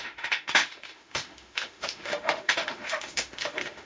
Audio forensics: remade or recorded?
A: remade